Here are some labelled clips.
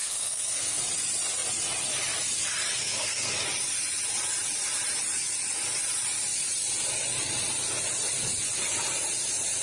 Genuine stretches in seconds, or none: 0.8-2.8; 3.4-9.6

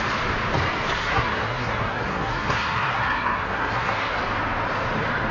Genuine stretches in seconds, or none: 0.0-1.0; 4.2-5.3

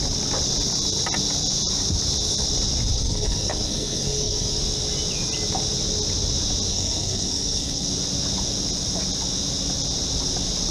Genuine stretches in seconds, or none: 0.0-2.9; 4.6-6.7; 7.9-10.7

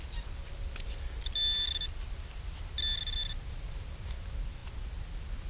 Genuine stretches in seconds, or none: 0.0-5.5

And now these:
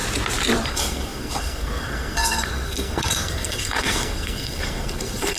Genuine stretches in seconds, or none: 0.0-0.7